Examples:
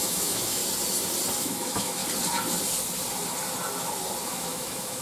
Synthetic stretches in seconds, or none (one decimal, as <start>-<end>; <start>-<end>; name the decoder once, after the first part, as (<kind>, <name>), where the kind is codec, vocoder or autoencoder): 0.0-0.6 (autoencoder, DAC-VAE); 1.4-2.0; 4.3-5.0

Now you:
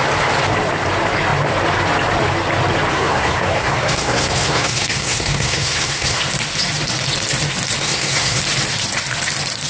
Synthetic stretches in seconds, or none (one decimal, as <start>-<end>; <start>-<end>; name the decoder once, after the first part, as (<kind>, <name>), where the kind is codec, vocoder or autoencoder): 2.9-6.2 (codec, SNAC); 7.8-8.4

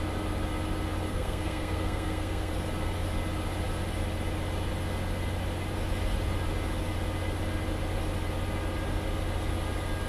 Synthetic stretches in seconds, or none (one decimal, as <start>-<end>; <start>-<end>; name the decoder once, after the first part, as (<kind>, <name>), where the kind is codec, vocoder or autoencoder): 1.1-2.5 (codec, SNAC)

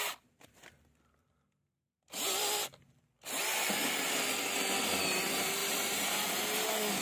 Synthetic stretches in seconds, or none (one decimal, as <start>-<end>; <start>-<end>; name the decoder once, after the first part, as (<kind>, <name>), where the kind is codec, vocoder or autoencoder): 5.6-6.2 (vocoder, BigVGAN v2)